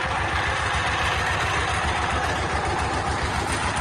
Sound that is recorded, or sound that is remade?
recorded